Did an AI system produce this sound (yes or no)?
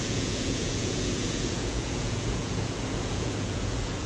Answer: yes